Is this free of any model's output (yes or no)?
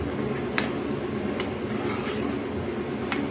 yes